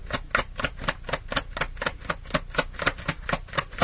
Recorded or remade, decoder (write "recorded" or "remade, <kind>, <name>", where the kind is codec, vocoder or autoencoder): recorded